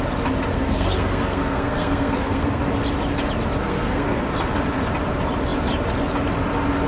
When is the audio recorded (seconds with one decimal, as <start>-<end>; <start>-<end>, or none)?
0.0-0.5; 2.6-3.6; 4.2-6.9